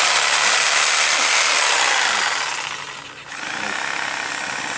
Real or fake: real